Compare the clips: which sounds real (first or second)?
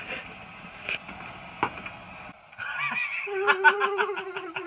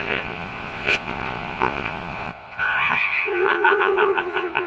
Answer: first